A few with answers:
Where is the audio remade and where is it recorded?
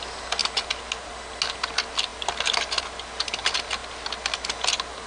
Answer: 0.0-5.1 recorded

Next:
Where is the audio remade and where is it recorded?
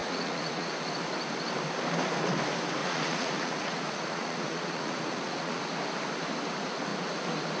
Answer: 0.0-0.7 remade; 0.7-2.8 recorded; 2.8-5.6 remade; 5.6-7.6 recorded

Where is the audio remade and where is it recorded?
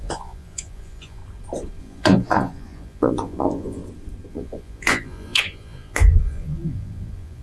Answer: 0.0-1.2 remade; 1.2-1.8 recorded; 1.8-3.8 remade; 3.8-4.3 recorded; 4.3-7.4 remade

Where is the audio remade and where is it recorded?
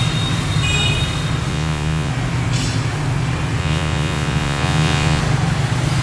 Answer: 0.0-1.5 recorded; 1.5-2.1 remade; 2.1-3.6 recorded; 3.6-5.2 remade; 5.2-6.0 recorded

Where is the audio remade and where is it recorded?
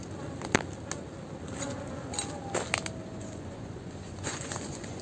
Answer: 0.0-3.0 recorded; 3.0-5.0 remade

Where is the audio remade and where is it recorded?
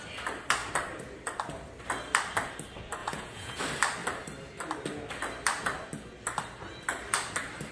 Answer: 0.0-3.0 recorded; 3.0-3.6 remade; 3.6-7.7 recorded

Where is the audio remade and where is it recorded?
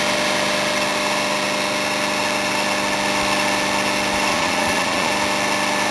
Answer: 0.0-4.3 recorded; 4.3-5.1 remade; 5.1-5.9 recorded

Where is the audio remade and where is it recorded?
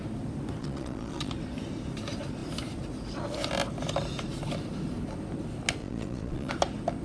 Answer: 0.0-0.6 recorded; 0.6-1.3 remade; 1.3-5.8 recorded; 5.8-6.5 remade; 6.5-7.0 recorded